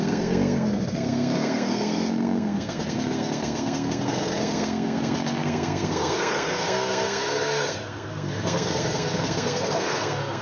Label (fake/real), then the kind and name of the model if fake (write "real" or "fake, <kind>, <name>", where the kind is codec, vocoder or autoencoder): fake, codec, SNAC